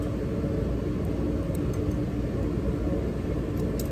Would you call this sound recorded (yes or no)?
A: yes